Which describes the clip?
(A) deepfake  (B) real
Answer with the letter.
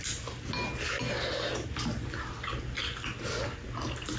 B